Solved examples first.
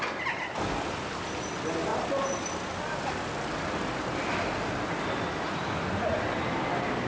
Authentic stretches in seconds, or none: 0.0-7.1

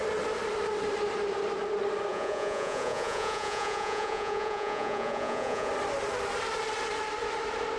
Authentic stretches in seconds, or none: 0.0-2.1; 5.7-7.8

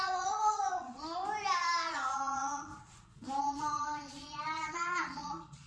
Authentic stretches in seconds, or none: 1.2-1.9; 2.7-3.4

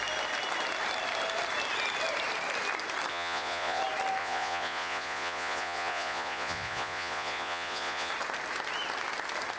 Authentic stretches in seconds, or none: 0.0-3.1; 3.8-4.2; 8.1-9.6

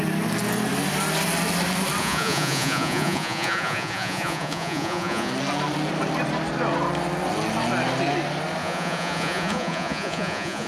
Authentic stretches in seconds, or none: 0.0-2.0; 5.3-8.6

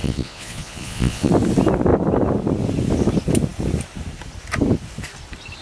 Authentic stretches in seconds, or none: 1.3-5.6